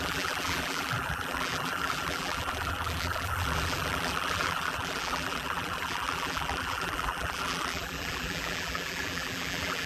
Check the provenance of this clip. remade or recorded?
remade